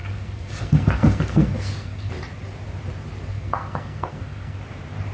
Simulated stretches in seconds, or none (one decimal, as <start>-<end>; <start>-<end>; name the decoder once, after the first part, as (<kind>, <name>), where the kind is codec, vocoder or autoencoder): 0.0-2.1 (codec, SNAC); 3.3-4.6